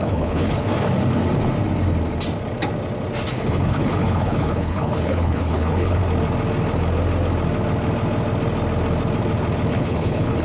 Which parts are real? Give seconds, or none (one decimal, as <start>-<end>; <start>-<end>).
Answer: 0.6-3.3; 6.0-9.7